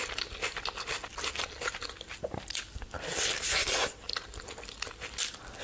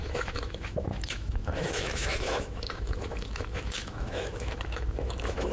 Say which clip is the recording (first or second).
first